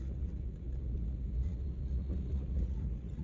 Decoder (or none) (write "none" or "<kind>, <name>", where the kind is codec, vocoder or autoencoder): vocoder, Vocos